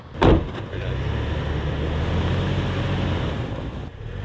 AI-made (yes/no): no